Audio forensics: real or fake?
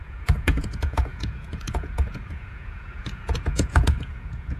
fake